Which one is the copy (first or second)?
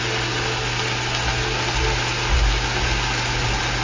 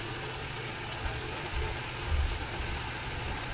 second